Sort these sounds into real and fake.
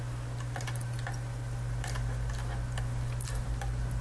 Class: real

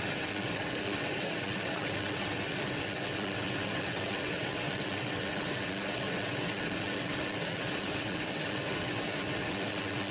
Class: fake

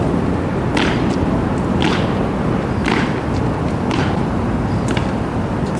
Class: real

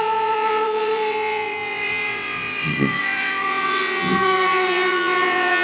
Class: fake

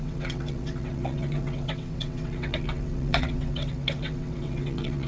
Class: fake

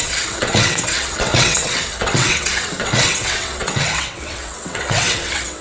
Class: fake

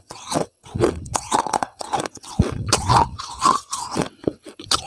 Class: fake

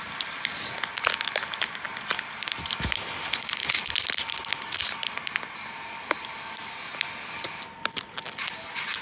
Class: real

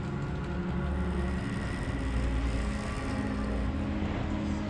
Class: real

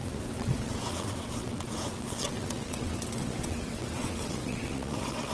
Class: fake